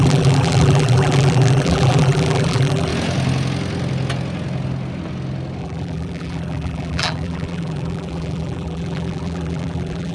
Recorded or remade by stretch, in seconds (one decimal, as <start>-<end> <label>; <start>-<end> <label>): 0.0-2.9 remade; 2.9-5.6 recorded; 5.6-10.1 remade